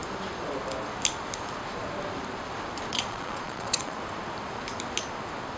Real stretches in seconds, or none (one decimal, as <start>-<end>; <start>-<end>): 0.0-2.9; 4.0-5.6